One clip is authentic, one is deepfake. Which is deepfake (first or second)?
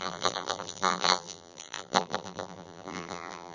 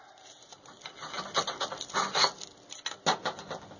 first